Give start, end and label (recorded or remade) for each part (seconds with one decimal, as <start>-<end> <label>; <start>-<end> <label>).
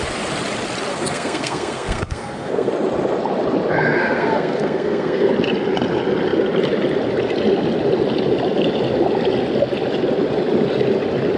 0.0-0.9 recorded; 0.9-2.7 remade; 2.7-4.0 recorded; 4.0-5.3 remade; 5.3-11.4 recorded